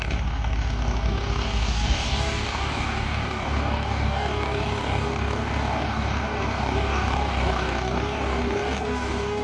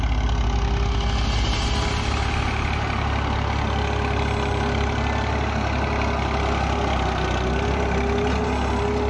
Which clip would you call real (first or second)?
second